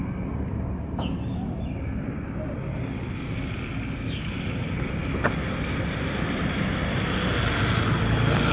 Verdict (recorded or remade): recorded